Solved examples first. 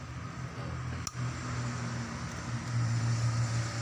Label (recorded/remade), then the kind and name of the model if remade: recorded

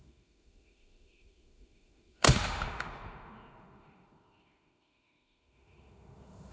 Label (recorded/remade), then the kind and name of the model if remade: remade, autoencoder, DAC-VAE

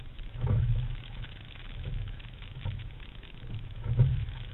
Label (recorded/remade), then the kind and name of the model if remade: remade, autoencoder, DAC-VAE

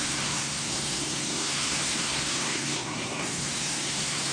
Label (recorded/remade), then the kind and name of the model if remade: remade, codec, SNAC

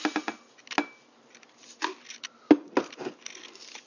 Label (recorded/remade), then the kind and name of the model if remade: recorded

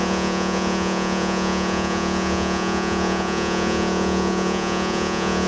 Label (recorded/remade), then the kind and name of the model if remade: remade, vocoder, Vocos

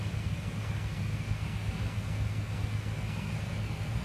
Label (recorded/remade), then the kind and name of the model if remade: remade, codec, SNAC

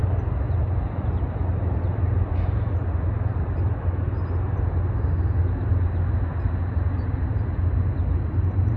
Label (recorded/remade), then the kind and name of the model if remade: recorded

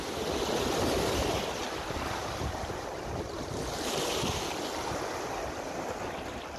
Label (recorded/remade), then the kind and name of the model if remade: recorded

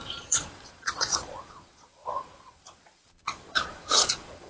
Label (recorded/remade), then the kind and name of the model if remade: remade, vocoder, Vocos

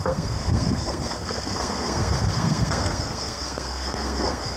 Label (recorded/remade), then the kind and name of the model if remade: remade, codec, SNAC